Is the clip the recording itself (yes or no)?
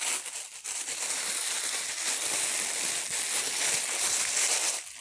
yes